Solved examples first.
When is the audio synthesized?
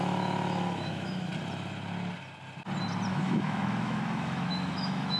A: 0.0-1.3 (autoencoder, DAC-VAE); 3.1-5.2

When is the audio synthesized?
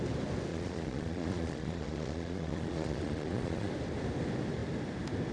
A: 0.5-3.7 (vocoder, Vocos)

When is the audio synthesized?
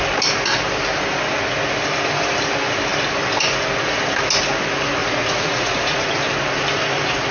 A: 5.0-6.1 (vocoder, Vocos)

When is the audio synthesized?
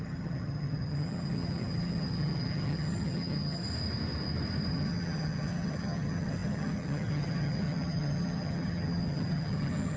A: 0.0-3.6 (vocoder, HiFi-GAN); 4.7-10.0